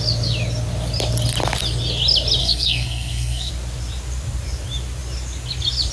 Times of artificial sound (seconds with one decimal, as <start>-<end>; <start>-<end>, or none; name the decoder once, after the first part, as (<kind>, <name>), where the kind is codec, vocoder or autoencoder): 2.4-3.5 (codec, SNAC)